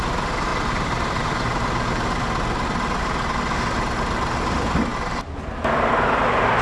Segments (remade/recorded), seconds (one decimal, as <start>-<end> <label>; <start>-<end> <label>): 0.0-6.6 recorded